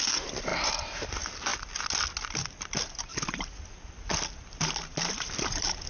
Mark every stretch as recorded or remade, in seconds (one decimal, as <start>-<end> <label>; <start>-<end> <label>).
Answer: 0.0-0.5 remade; 0.5-1.1 recorded; 1.1-1.5 remade; 1.5-2.3 recorded; 2.3-5.9 remade

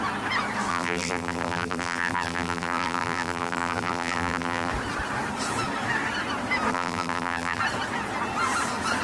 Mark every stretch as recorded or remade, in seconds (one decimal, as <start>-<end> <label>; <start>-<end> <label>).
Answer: 0.0-0.7 recorded; 0.7-4.7 remade; 4.7-6.7 recorded; 6.7-7.6 remade; 7.6-9.0 recorded

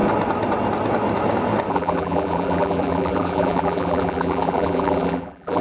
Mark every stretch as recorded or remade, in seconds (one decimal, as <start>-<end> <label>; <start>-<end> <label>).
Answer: 0.0-1.7 recorded; 1.7-5.6 remade

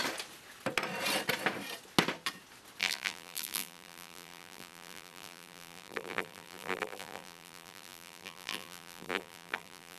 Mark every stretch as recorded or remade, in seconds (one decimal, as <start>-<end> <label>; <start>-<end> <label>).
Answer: 0.0-2.8 recorded; 2.8-10.0 remade

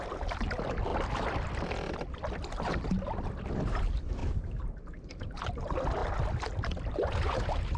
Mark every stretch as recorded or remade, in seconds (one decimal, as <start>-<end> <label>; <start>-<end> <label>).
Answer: 0.0-4.2 recorded; 4.2-5.4 remade; 5.4-7.8 recorded

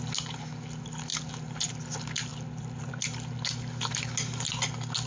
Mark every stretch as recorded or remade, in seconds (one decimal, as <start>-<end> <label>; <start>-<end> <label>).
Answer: 0.0-2.3 recorded; 2.3-3.0 remade; 3.0-5.1 recorded

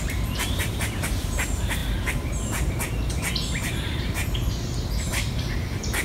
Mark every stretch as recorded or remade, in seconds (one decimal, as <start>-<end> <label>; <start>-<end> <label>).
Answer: 0.0-4.2 remade; 4.2-5.1 recorded; 5.1-6.0 remade

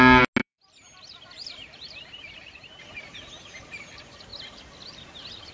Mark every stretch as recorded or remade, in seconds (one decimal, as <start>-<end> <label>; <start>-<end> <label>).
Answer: 0.0-0.4 recorded; 0.4-2.8 remade; 2.8-5.5 recorded